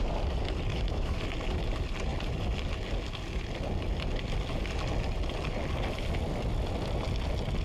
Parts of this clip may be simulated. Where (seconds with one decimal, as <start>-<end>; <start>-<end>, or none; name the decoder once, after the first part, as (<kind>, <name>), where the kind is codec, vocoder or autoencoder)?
0.7-1.2 (autoencoder, DAC-VAE)